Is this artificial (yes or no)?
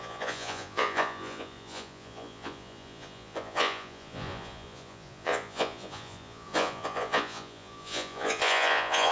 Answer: yes